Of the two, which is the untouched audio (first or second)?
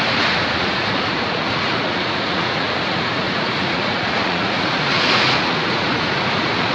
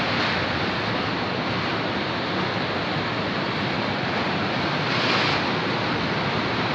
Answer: second